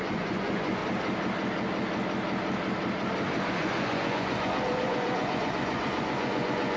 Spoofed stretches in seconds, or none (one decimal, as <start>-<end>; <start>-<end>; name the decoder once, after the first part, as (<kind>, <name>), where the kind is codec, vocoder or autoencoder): 0.0-0.8 (vocoder, Vocos); 3.5-6.8